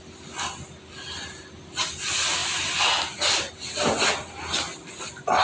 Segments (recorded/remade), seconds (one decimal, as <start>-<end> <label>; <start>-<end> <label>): 0.0-5.4 recorded